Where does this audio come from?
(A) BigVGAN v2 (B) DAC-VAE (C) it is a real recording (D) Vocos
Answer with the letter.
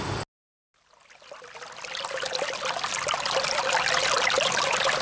C